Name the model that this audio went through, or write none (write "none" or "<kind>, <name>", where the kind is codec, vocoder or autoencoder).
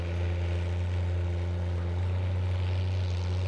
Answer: none